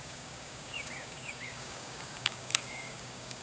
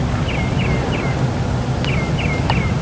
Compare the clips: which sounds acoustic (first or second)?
second